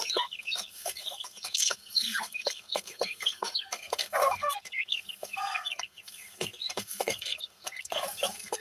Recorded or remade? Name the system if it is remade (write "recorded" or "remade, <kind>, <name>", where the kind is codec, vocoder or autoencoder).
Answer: remade, codec, SNAC